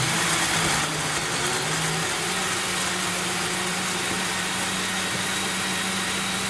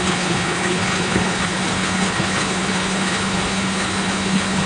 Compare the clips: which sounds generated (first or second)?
second